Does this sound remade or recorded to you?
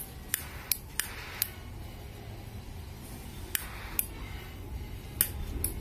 recorded